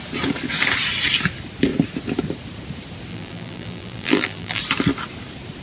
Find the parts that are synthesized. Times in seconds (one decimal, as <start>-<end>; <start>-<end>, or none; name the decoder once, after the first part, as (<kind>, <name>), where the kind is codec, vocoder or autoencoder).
3.1-4.6 (vocoder, BigVGAN v2)